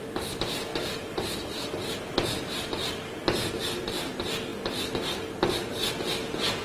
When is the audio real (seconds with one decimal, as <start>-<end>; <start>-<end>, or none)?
0.0-6.6